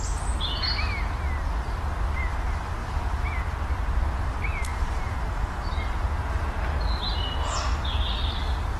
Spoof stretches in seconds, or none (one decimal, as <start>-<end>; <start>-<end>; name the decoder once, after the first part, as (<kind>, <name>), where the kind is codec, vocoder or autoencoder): 2.8-3.4 (vocoder, BigVGAN v2); 4.7-6.2